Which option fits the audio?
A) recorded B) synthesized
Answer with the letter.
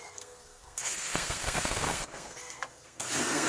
B